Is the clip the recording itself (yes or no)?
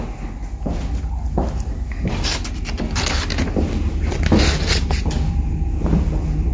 yes